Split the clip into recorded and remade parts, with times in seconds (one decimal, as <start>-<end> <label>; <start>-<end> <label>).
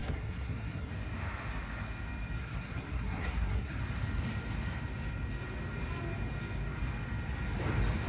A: 0.0-0.9 remade; 0.9-2.4 recorded; 2.4-3.8 remade; 3.8-8.1 recorded